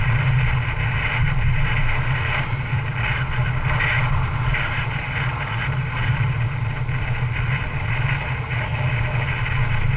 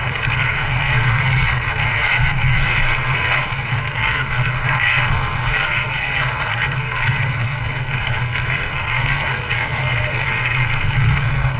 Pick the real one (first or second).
first